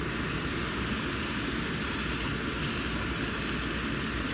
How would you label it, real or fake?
real